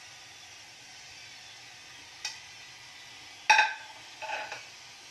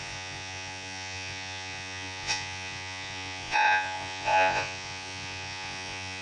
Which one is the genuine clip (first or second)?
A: first